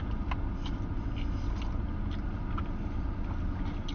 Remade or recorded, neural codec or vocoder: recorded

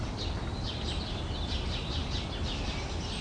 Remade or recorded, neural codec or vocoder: recorded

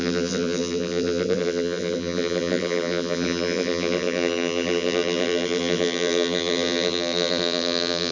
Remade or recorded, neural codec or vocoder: remade, vocoder, BigVGAN v2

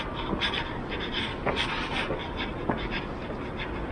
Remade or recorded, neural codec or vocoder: recorded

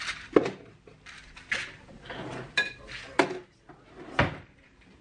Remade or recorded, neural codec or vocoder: recorded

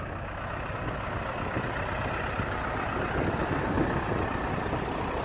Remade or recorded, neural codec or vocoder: recorded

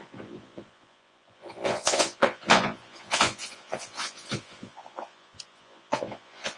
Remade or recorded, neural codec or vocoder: remade, vocoder, Vocos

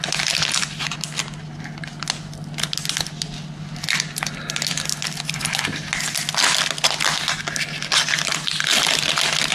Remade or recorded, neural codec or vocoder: recorded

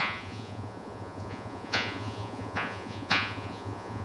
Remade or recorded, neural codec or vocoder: remade, vocoder, Vocos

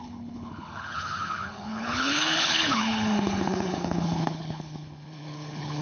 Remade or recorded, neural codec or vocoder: remade, codec, HILCodec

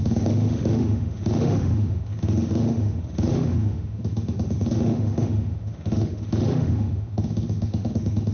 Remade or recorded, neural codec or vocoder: remade, autoencoder, DAC-VAE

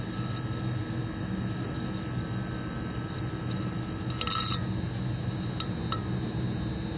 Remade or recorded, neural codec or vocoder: recorded